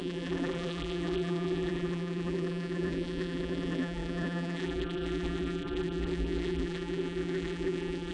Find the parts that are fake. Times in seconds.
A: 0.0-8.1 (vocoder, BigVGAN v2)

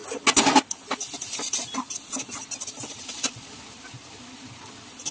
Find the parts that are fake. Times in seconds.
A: 3.1-5.1 (vocoder, BigVGAN v2)

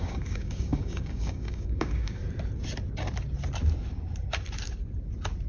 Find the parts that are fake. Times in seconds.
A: 0.0-2.2 (codec, DAC)

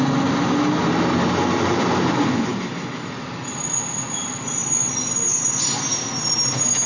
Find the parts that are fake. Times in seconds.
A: none

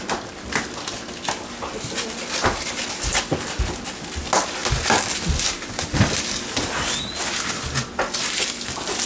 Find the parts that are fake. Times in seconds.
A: none

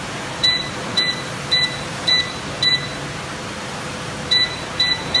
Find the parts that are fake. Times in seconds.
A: 0.0-5.2 (vocoder, BigVGAN v2)

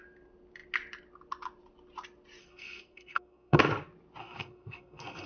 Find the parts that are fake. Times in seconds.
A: 2.4-3.6 (codec, SNAC); 4.2-5.3

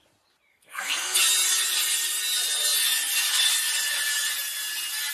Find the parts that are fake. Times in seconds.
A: 0.5-1.2 (codec, SNAC)